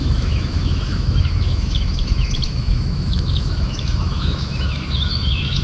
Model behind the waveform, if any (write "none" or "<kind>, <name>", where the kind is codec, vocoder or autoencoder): autoencoder, DAC-VAE